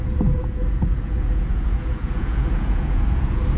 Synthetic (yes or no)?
yes